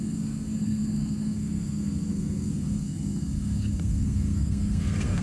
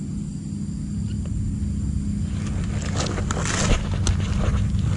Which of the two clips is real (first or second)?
second